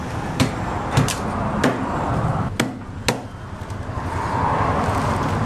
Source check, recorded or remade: recorded